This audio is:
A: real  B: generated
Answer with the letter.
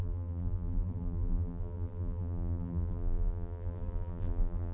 B